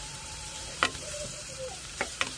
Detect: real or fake fake